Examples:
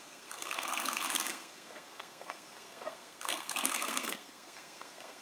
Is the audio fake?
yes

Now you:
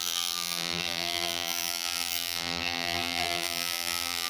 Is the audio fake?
yes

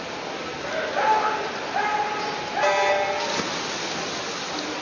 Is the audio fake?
no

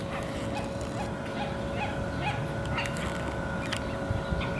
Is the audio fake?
no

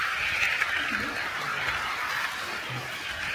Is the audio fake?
no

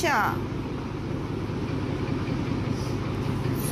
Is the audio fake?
no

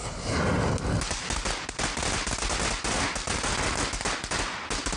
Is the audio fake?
no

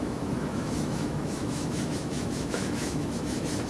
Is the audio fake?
yes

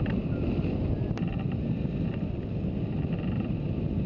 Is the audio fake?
no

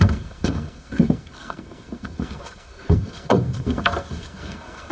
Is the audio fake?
yes